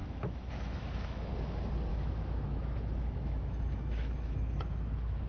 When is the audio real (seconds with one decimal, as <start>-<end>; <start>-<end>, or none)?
1.3-1.9